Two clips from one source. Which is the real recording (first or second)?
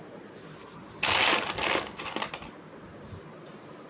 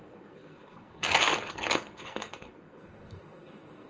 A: first